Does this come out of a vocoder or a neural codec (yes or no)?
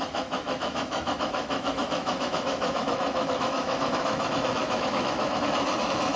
yes